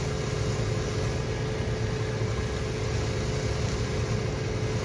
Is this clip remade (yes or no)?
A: no